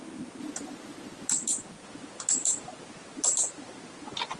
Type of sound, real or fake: real